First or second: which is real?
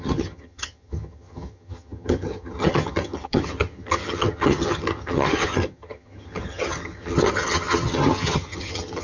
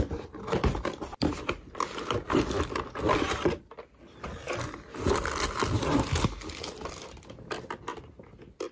second